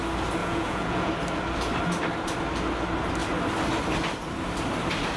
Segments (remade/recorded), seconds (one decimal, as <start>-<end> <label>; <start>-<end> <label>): 0.0-0.4 recorded; 0.4-1.1 remade; 1.1-5.2 recorded